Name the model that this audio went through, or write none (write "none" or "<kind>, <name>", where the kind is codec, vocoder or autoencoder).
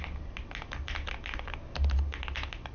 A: none